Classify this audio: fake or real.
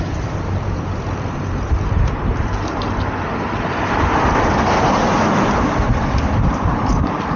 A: fake